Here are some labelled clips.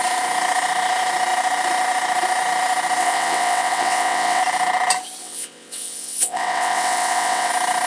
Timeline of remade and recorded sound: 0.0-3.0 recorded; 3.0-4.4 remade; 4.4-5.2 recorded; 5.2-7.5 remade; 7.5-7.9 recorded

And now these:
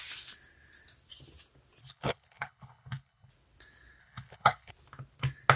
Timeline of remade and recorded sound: 0.0-1.8 recorded; 1.8-3.3 remade; 3.3-4.0 recorded; 4.0-4.7 remade; 4.7-5.6 recorded

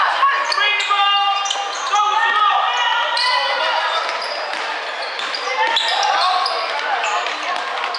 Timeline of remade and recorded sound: 0.0-8.0 recorded